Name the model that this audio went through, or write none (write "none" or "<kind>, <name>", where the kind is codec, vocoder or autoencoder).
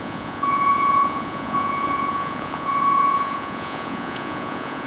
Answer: vocoder, Vocos